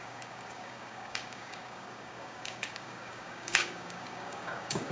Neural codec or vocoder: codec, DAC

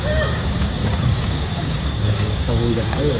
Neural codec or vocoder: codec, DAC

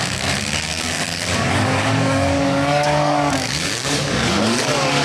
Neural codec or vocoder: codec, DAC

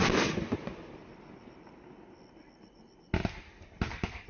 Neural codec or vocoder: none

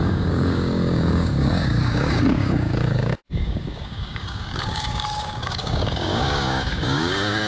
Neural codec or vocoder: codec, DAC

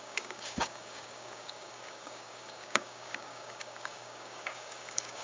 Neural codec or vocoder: codec, DAC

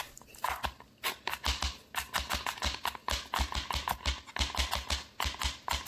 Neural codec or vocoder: none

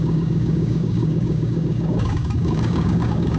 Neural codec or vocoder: codec, DAC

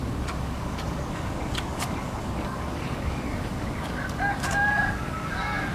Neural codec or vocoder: codec, DAC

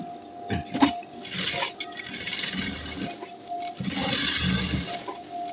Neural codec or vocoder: none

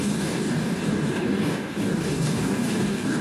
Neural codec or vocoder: codec, DAC